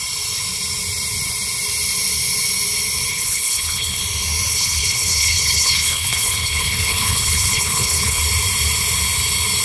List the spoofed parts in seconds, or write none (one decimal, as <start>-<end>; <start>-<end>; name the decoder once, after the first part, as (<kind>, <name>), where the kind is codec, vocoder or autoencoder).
3.1-4.0 (codec, HILCodec); 4.5-8.2